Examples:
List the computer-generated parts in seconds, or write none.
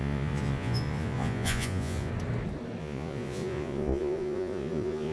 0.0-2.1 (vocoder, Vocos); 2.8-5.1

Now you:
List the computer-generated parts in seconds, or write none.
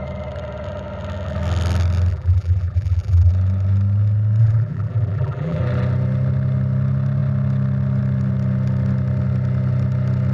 2.1-3.3 (vocoder, BigVGAN v2); 4.4-5.6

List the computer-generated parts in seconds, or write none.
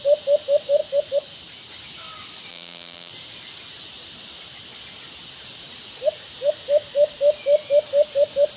2.5-3.1 (vocoder, BigVGAN v2)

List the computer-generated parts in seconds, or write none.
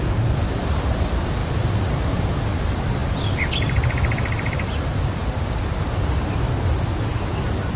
1.4-2.0 (vocoder, BigVGAN v2)